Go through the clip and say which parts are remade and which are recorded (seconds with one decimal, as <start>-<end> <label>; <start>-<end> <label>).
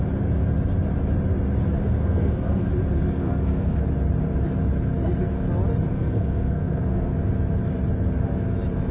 0.0-2.0 recorded; 2.0-2.7 remade; 2.7-3.2 recorded; 3.2-3.8 remade; 3.8-5.9 recorded; 5.9-7.1 remade; 7.1-8.9 recorded